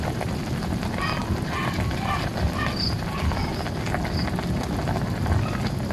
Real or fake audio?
real